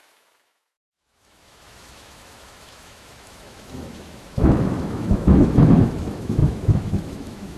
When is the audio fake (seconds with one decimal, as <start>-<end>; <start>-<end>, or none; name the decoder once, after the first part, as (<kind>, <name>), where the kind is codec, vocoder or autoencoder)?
0.0-7.6 (autoencoder, DAC-VAE)